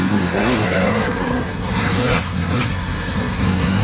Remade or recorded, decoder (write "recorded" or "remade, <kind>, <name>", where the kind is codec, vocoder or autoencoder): remade, codec, SNAC